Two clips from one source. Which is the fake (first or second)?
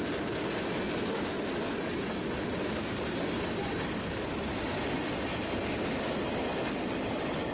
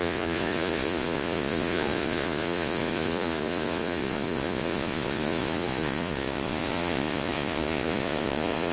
second